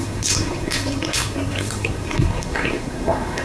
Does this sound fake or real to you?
fake